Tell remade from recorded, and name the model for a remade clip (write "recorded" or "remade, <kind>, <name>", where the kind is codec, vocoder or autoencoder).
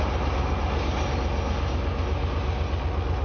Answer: recorded